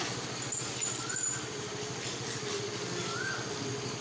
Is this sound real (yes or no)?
yes